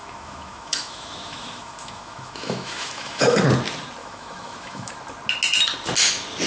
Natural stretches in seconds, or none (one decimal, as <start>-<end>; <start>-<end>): 3.4-4.0; 4.9-6.5